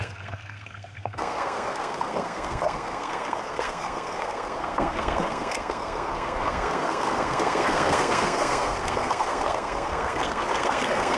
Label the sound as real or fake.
fake